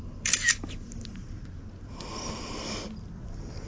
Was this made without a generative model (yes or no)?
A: yes